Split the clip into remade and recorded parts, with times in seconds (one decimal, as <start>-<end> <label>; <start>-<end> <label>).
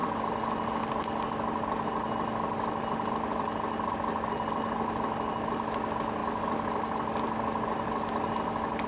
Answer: 0.0-8.9 recorded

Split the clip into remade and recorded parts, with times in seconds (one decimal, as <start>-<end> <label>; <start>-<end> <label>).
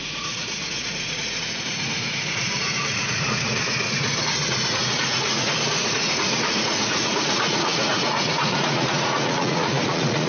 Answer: 0.0-10.3 remade